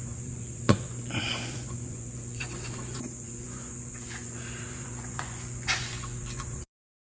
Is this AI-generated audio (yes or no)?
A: yes